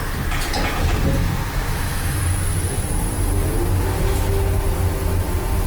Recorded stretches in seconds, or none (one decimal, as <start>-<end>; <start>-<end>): 0.0-1.2; 2.2-5.7